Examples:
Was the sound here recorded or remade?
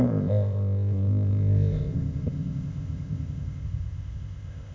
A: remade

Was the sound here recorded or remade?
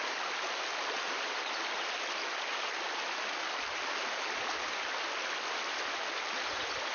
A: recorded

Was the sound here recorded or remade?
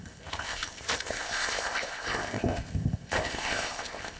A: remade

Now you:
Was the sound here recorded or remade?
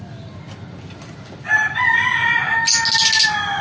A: recorded